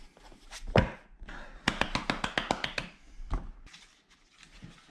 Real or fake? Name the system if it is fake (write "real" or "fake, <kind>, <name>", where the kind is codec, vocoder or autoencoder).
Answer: real